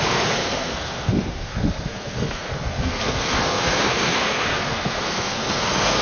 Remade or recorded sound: remade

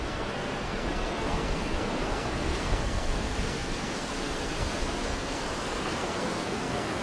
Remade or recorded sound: remade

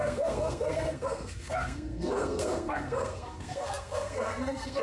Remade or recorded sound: remade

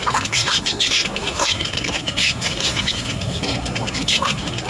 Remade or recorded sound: remade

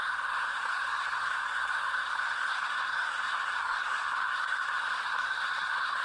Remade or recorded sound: remade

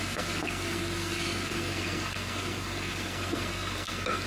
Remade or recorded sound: remade